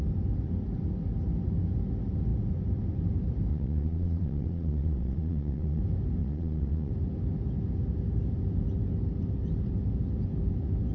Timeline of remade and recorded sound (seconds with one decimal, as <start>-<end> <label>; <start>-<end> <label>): 0.0-3.5 recorded; 3.5-5.8 remade; 5.8-6.2 recorded; 6.2-6.9 remade; 6.9-10.9 recorded

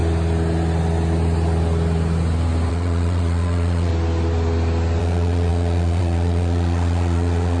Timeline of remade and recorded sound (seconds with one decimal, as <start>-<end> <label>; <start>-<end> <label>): 0.0-2.7 recorded; 2.7-3.9 remade; 3.9-5.0 recorded; 5.0-7.6 remade

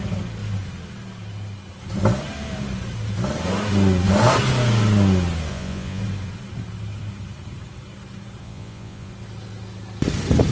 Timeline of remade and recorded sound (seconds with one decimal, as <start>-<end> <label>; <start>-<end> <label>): 0.0-5.5 recorded; 5.5-6.0 remade; 6.0-8.4 recorded; 8.4-9.1 remade; 9.1-10.5 recorded

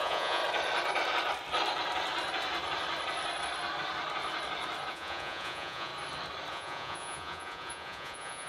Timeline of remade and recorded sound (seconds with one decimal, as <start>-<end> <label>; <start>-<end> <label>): 0.0-0.4 remade; 0.4-4.9 recorded; 4.9-5.9 remade; 5.9-6.5 recorded; 6.5-8.5 remade

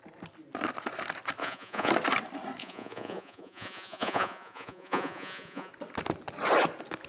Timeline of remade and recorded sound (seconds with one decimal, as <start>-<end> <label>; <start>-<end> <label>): 0.0-1.4 recorded; 1.4-1.9 remade; 1.9-2.6 recorded; 2.6-5.7 remade; 5.7-7.1 recorded

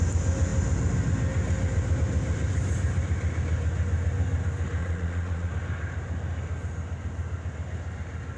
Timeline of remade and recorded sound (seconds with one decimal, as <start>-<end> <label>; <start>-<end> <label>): 0.0-4.8 recorded; 4.8-5.5 remade; 5.5-8.4 recorded

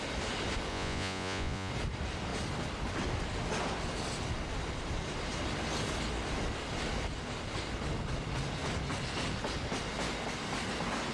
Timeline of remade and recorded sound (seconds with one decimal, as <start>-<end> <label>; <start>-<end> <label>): 0.0-0.7 recorded; 0.7-1.7 remade; 1.7-11.1 recorded

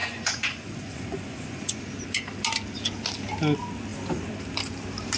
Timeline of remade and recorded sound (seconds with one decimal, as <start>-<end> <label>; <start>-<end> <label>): 0.0-1.8 remade; 1.8-5.2 recorded